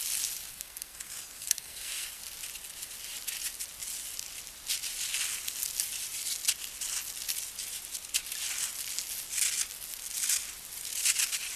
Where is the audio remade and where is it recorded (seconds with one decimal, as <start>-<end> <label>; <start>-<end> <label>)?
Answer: 0.0-0.5 recorded; 0.5-2.2 remade; 2.2-11.6 recorded